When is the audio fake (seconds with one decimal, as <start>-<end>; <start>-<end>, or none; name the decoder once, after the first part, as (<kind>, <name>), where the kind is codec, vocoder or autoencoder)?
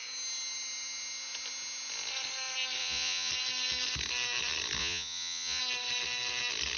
2.8-3.3 (vocoder, Vocos); 4.8-5.6